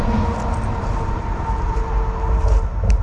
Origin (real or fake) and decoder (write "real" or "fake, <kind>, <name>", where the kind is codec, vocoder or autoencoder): real